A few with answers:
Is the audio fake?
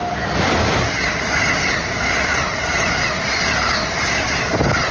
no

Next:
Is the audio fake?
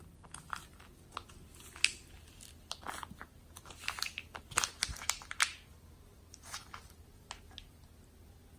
no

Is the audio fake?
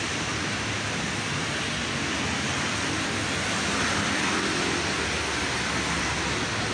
no